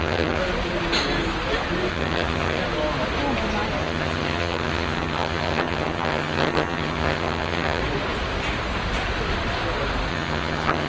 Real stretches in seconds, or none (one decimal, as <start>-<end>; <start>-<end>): 0.4-1.9; 2.6-3.8; 7.8-10.1